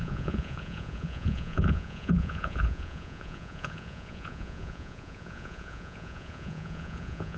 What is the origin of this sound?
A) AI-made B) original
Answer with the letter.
A